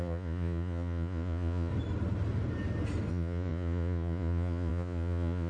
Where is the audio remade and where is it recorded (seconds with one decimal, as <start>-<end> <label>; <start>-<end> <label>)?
0.0-1.7 remade; 1.7-3.1 recorded; 3.1-5.5 remade